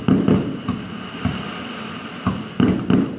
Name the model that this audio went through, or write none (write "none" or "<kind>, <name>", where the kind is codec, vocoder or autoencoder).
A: none